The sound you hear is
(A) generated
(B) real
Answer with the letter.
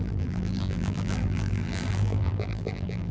A